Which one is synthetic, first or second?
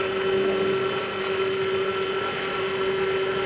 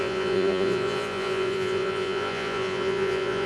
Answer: second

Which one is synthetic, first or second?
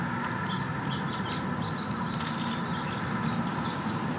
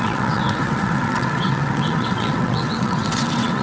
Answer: second